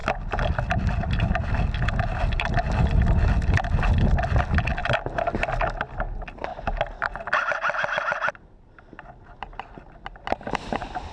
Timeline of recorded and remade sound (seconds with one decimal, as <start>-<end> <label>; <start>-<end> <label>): 0.0-11.1 recorded